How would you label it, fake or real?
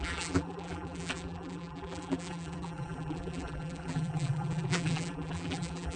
fake